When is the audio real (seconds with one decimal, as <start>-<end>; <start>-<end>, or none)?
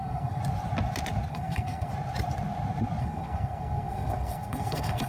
0.4-1.3; 1.9-3.0